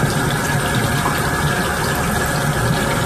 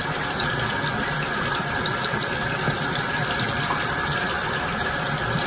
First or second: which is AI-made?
second